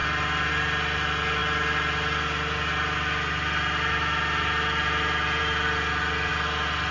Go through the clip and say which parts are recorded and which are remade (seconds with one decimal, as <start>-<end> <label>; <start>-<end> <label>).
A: 0.0-6.9 recorded

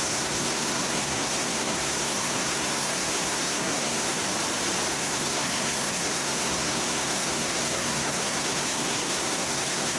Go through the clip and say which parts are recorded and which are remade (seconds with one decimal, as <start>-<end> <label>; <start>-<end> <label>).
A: 0.0-4.2 remade; 4.2-4.9 recorded; 4.9-10.0 remade

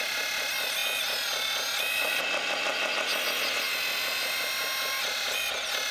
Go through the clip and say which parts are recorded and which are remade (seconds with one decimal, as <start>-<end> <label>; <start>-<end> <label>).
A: 0.0-5.9 recorded

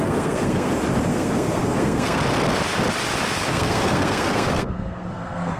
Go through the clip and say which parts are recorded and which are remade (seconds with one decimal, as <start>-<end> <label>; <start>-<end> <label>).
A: 0.0-0.7 remade; 0.7-1.1 recorded; 1.1-2.2 remade; 2.2-3.5 recorded; 3.5-5.6 remade

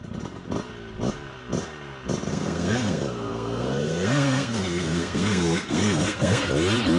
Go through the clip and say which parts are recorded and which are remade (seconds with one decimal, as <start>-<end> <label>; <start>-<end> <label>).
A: 0.0-2.3 recorded; 2.3-6.5 remade; 6.5-7.0 recorded

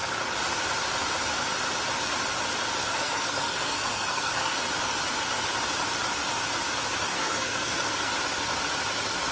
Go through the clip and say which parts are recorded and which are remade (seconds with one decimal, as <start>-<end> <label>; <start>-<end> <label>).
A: 0.0-2.8 recorded; 2.8-4.6 remade; 4.6-7.1 recorded; 7.1-8.1 remade; 8.1-9.3 recorded

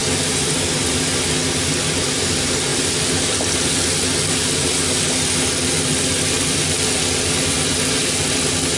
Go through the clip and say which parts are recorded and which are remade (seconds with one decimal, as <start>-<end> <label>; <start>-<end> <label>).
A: 0.0-8.8 recorded

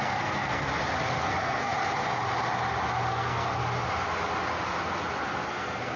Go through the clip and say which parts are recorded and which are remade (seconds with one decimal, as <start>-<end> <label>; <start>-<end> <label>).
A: 0.0-0.7 remade; 0.7-1.2 recorded; 1.2-1.7 remade; 1.7-3.1 recorded; 3.1-3.6 remade; 3.6-5.5 recorded; 5.5-6.0 remade